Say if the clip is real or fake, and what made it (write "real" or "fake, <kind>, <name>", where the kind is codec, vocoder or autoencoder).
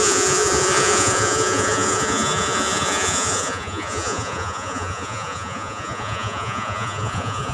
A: fake, vocoder, Vocos